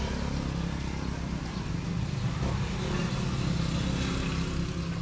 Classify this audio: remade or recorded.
recorded